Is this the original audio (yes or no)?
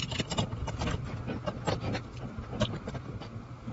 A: yes